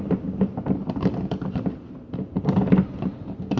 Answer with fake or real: real